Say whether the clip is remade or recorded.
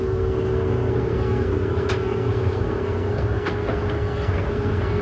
remade